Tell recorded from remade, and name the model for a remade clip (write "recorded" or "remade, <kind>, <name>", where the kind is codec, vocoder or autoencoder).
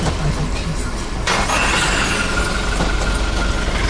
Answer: recorded